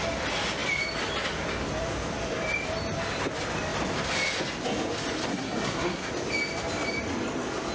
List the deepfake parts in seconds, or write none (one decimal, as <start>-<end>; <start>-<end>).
5.3-6.1